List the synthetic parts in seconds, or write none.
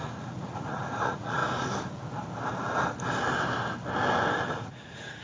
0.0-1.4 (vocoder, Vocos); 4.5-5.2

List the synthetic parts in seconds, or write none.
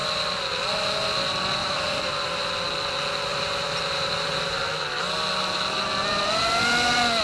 1.6-2.4 (vocoder, BigVGAN v2); 3.3-4.7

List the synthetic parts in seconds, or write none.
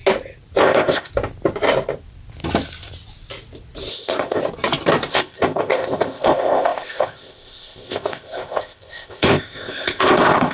0.6-1.1 (codec, ZipCodec); 3.9-4.4; 5.1-10.5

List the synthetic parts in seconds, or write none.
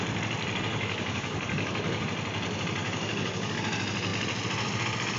0.7-2.0 (codec, DAC); 2.8-3.6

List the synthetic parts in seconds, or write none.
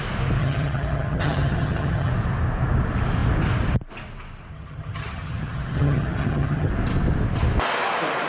0.4-2.1 (vocoder, HiFi-GAN); 4.5-6.7